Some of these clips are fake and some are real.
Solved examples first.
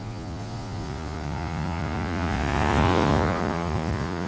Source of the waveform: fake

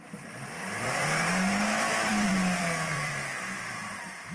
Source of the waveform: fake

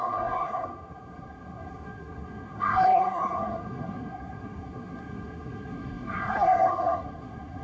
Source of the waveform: fake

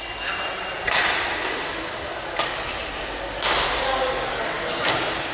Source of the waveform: real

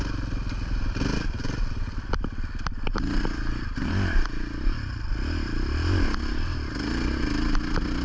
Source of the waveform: real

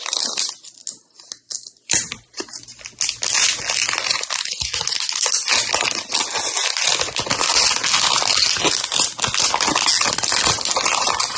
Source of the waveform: real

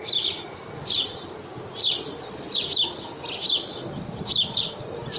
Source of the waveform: real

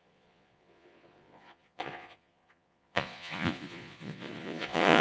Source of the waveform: fake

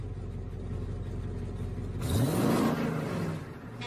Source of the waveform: real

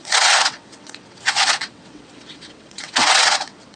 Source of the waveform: fake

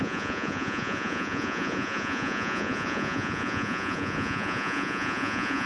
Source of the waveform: fake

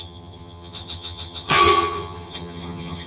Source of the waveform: fake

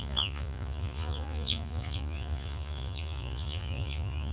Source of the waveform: fake